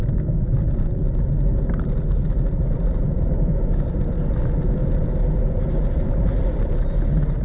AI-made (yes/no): yes